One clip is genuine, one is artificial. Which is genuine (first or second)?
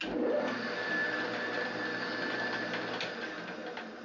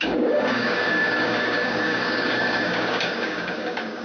first